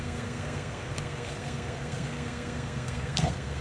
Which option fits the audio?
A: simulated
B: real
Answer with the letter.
A